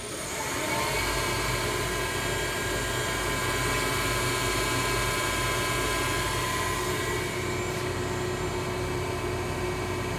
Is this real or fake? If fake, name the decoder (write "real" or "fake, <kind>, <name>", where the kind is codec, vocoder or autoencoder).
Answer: real